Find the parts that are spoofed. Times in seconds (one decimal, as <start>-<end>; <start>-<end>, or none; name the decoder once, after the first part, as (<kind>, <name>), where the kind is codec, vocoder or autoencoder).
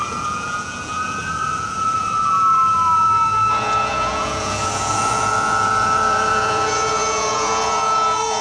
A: 0.0-8.4 (vocoder, Vocos)